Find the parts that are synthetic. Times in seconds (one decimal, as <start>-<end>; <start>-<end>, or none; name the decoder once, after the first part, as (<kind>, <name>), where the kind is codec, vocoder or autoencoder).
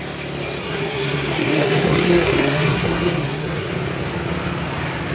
0.6-3.7 (codec, SNAC)